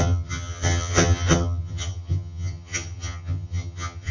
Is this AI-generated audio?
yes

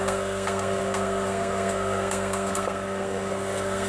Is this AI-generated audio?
yes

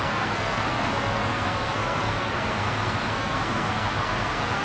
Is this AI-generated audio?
yes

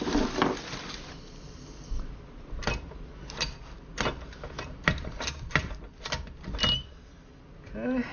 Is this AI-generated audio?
no